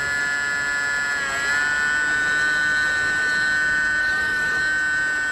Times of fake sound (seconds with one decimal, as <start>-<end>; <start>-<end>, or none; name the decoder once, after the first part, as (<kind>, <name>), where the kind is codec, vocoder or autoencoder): 4.0-4.6 (codec, DAC)